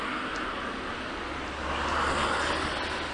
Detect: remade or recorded recorded